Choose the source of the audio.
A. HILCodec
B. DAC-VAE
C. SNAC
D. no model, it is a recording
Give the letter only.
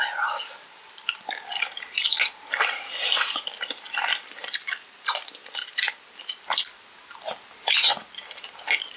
D